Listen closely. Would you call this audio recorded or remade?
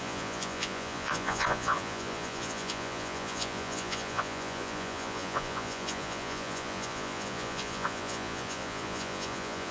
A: remade